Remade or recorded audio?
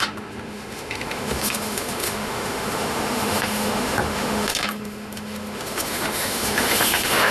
remade